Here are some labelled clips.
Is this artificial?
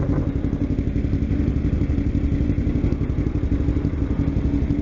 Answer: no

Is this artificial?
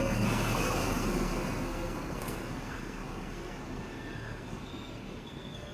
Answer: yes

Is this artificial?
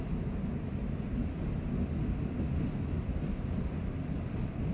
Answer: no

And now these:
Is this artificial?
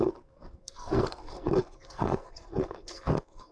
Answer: yes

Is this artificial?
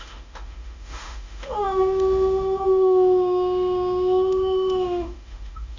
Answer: yes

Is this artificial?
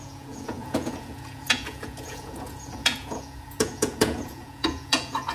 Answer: yes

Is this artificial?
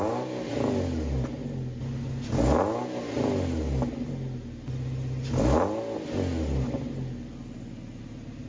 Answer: no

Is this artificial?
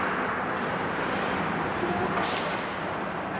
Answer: no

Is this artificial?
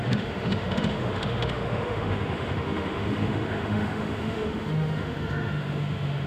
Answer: yes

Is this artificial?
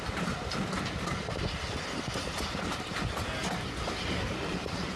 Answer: no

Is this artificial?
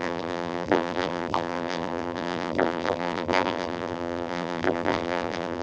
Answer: yes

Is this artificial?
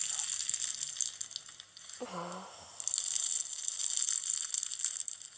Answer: no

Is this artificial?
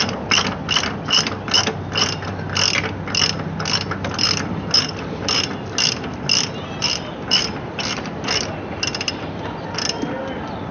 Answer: no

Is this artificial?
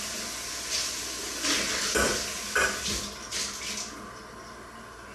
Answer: no